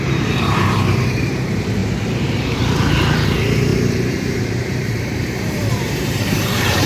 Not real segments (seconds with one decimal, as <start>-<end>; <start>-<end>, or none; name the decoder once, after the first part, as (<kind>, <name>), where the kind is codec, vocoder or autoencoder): 0.0-1.8 (vocoder, BigVGAN v2); 2.3-6.9